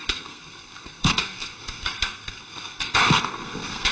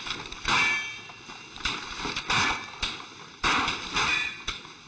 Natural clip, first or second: second